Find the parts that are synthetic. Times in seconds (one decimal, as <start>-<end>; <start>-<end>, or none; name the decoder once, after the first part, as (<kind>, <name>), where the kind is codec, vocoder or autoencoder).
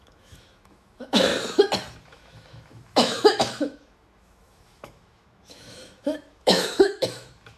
0.0-1.3 (autoencoder, DAC-VAE); 2.0-7.6